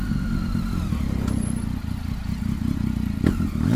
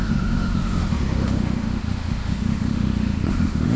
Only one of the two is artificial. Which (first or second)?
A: second